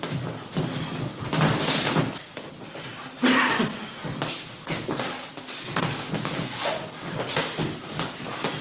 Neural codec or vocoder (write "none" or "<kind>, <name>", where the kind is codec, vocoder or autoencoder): none